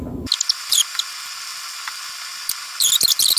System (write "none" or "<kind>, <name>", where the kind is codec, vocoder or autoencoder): vocoder, BigVGAN v2